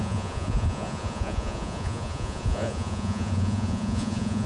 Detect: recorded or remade remade